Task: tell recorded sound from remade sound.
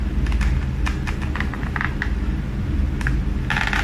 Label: recorded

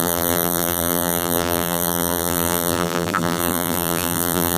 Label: remade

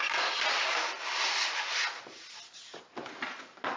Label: recorded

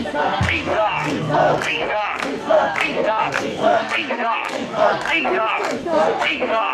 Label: remade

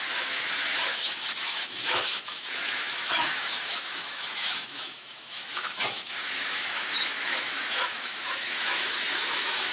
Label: remade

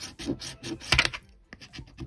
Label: recorded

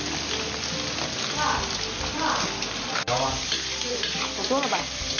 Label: recorded